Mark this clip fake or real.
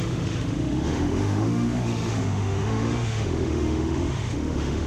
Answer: fake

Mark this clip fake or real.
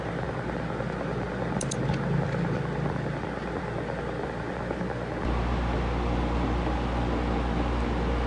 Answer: real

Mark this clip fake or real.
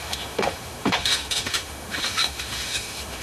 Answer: fake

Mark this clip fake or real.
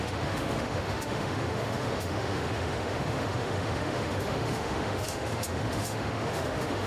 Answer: fake